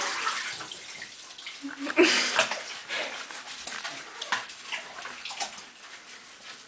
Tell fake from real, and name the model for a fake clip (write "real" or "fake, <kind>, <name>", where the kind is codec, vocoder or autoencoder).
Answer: real